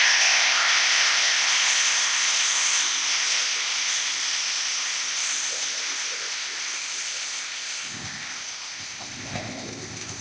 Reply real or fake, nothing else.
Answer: fake